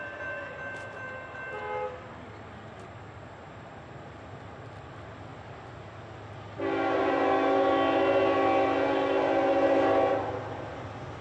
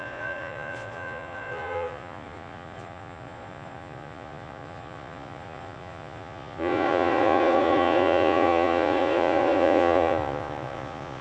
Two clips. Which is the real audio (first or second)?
first